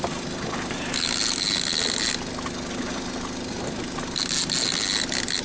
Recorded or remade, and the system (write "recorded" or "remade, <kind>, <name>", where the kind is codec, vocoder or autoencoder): recorded